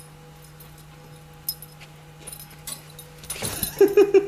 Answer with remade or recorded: recorded